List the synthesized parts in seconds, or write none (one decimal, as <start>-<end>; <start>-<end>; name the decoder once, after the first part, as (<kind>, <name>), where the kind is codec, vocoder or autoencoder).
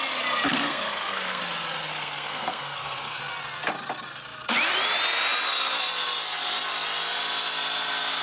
0.5-1.4 (codec, SNAC); 1.9-3.2